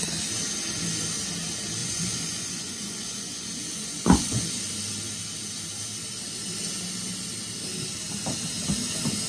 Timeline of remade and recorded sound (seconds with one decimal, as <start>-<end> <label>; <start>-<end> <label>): 0.0-1.8 recorded; 1.8-4.5 remade; 4.5-9.3 recorded